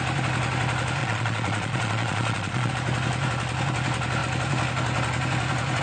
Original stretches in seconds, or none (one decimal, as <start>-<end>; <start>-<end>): 0.0-1.0; 2.7-5.8